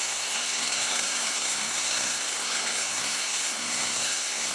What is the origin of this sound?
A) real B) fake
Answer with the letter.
B